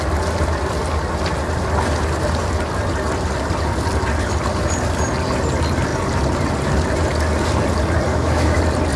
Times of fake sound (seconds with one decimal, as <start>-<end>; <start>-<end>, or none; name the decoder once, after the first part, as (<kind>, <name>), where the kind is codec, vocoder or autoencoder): 8.1-8.6 (autoencoder, DAC-VAE)